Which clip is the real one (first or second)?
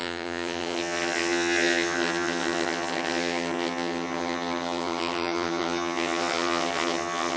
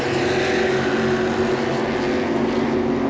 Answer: second